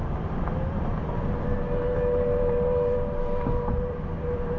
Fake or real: fake